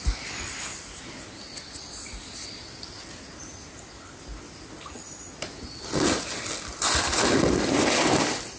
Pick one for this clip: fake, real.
real